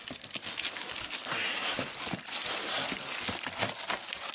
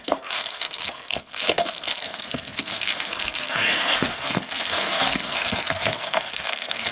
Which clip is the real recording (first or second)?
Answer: first